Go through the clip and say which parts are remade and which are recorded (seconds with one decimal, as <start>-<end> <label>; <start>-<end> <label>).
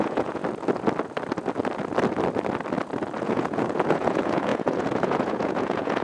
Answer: 0.0-0.4 remade; 0.4-3.2 recorded; 3.2-6.0 remade